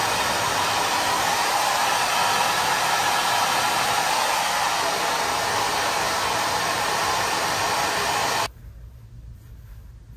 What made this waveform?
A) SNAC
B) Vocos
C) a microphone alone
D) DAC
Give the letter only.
C